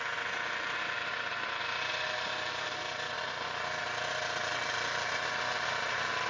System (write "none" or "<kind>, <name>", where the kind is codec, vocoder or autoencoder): none